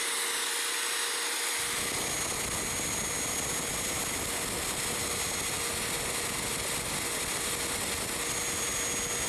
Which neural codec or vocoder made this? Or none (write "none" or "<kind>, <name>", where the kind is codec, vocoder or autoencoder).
none